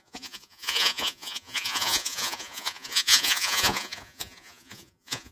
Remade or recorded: remade